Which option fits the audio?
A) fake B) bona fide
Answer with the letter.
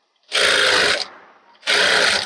B